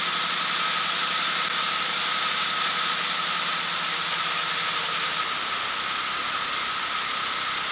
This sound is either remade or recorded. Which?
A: recorded